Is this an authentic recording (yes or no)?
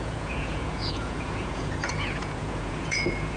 no